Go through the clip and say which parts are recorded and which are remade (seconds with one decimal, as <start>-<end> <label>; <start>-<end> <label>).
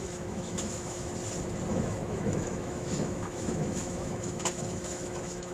0.0-1.1 remade; 1.1-1.7 recorded; 1.7-5.5 remade